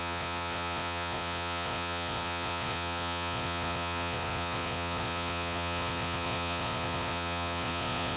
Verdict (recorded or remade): remade